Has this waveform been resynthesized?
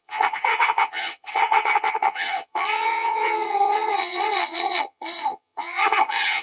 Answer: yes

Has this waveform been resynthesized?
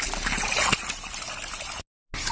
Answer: no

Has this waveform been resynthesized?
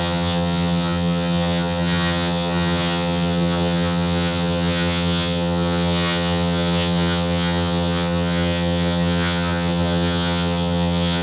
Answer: yes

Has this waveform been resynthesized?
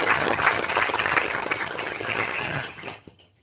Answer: yes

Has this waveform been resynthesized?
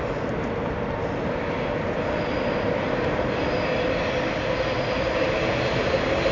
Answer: no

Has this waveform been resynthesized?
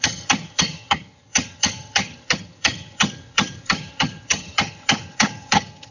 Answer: yes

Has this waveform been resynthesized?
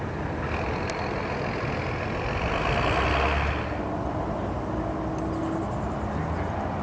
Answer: no